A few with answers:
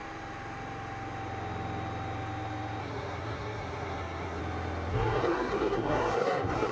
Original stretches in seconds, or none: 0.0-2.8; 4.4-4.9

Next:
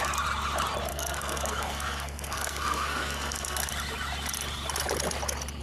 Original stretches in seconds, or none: 0.0-0.9; 3.7-5.6

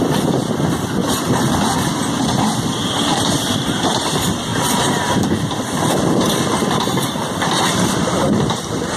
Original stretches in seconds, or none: 4.5-5.5

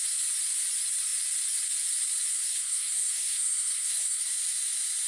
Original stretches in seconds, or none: 0.0-2.3; 4.2-5.1

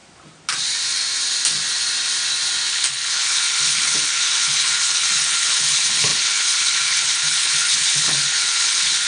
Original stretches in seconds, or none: 0.0-2.7

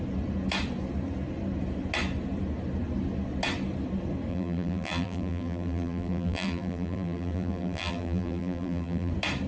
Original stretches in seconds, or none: 0.0-4.3; 9.1-9.5